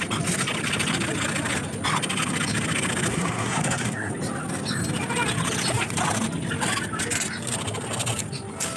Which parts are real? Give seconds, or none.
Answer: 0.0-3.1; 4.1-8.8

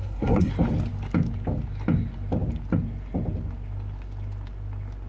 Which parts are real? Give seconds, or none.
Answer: 0.5-5.1

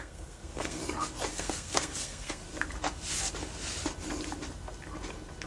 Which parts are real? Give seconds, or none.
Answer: 0.8-1.3; 2.4-5.5

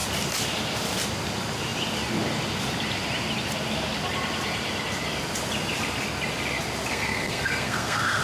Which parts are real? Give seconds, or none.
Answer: 0.0-6.9

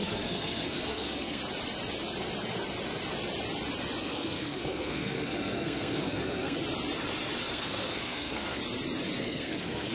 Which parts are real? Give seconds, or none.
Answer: 1.4-4.0; 6.6-7.5; 8.6-9.2